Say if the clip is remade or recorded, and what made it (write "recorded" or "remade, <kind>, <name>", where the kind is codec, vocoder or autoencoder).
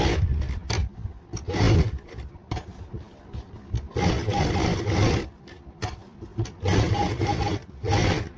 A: recorded